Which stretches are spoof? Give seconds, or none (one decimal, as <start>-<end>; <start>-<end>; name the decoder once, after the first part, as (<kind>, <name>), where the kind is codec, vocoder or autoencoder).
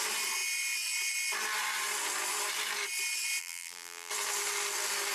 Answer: 3.4-4.1 (vocoder, BigVGAN v2)